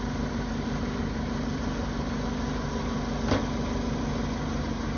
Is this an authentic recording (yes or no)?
yes